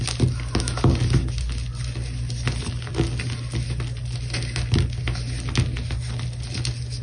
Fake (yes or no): no